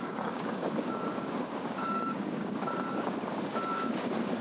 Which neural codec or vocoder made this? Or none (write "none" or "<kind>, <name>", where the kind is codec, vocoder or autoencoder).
codec, DAC